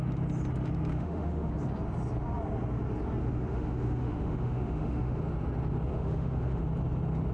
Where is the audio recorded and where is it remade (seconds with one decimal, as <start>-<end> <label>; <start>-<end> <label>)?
0.0-0.9 recorded; 0.9-1.5 remade; 1.5-3.2 recorded; 3.2-5.2 remade; 5.2-5.9 recorded; 5.9-6.6 remade; 6.6-7.3 recorded